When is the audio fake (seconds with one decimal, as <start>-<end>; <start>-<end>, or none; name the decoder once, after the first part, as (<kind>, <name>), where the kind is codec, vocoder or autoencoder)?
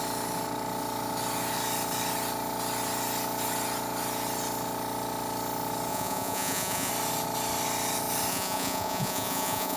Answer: 5.9-6.9 (vocoder, Vocos); 8.3-9.8